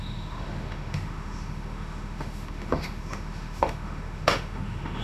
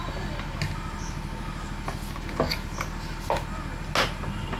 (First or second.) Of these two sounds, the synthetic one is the first